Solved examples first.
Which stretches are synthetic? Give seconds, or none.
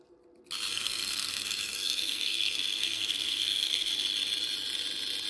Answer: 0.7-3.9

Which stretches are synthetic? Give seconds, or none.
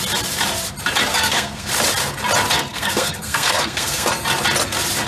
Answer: 1.1-1.7; 2.7-4.1